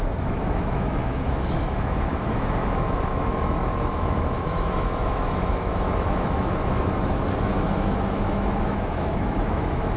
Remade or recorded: remade